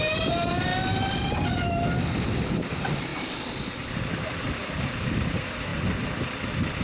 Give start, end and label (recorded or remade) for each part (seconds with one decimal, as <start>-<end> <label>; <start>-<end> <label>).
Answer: 0.0-0.7 remade; 0.7-2.5 recorded; 2.5-5.7 remade; 5.7-6.8 recorded